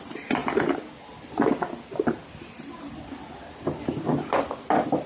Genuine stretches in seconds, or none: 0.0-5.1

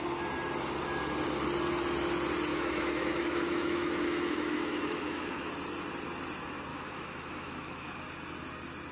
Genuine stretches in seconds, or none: 0.0-2.5; 5.5-6.7; 8.0-8.9

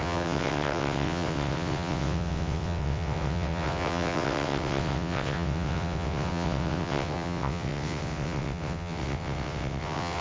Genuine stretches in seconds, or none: none